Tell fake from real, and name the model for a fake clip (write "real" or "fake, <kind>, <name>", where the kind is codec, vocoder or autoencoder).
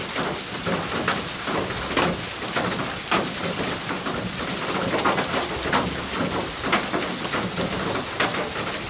real